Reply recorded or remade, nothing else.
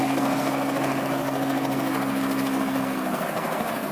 remade